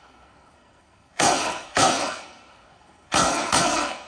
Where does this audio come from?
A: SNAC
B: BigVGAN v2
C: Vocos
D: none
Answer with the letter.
A